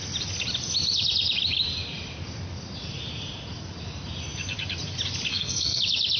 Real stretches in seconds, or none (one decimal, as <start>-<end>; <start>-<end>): 0.0-5.3; 5.8-6.2